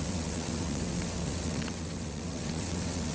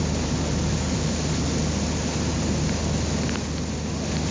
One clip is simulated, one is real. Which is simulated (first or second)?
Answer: first